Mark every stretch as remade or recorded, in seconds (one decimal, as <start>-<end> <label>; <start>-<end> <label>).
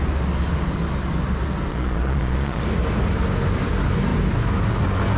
0.0-1.7 recorded; 1.7-2.6 remade; 2.6-5.2 recorded